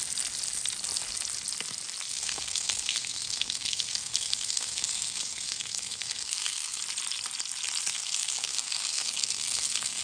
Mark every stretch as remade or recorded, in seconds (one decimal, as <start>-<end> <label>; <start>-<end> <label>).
0.0-2.1 recorded; 2.1-6.8 remade; 6.8-7.9 recorded; 7.9-10.0 remade